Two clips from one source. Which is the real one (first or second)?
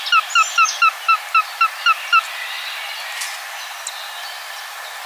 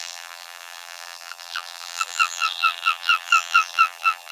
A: first